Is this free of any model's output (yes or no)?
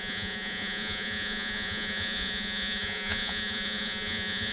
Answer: no